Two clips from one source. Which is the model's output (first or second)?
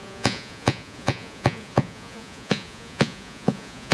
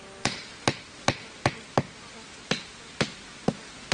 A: first